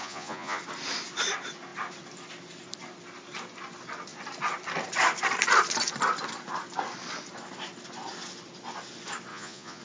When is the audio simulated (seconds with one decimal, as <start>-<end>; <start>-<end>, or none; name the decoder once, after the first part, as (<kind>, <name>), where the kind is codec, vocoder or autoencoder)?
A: 0.0-0.6 (vocoder, Vocos); 9.3-9.8